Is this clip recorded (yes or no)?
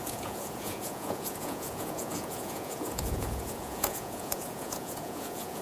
no